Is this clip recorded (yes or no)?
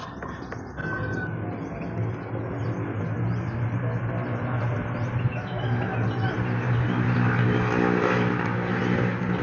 yes